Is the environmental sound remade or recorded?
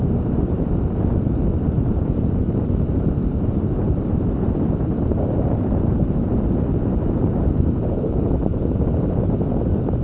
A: remade